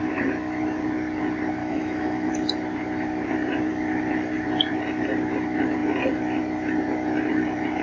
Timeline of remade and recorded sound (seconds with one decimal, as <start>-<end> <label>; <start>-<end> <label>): 0.0-1.6 recorded; 1.6-2.3 remade; 2.3-7.8 recorded